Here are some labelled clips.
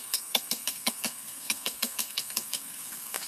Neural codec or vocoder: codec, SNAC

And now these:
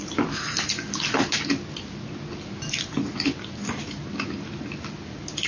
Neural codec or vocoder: none